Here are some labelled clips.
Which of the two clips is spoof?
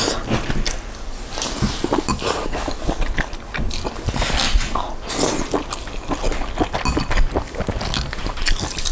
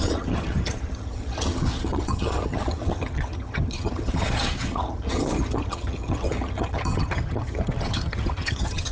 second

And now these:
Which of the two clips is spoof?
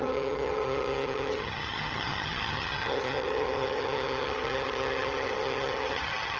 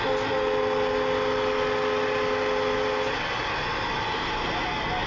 first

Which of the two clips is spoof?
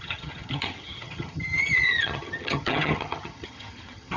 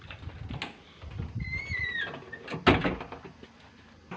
first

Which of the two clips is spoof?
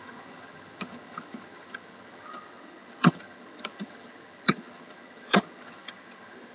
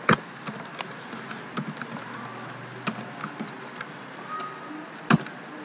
first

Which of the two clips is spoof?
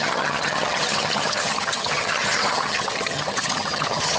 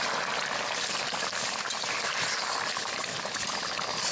first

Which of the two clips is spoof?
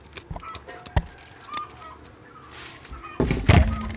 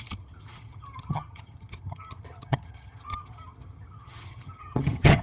second